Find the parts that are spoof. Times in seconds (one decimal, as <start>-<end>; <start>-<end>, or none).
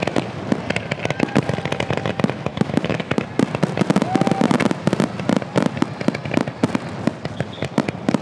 2.5-3.1